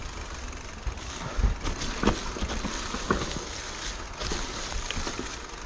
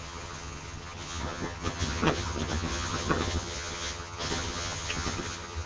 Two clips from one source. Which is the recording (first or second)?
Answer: first